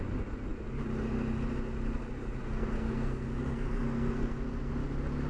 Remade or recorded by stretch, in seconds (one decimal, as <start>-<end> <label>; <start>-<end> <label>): 0.0-2.4 recorded; 2.4-4.7 remade; 4.7-5.3 recorded